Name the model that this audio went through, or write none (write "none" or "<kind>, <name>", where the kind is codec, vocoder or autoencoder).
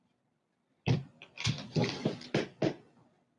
vocoder, BigVGAN v2